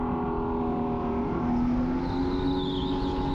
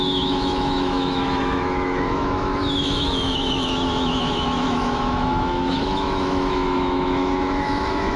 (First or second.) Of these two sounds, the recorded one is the first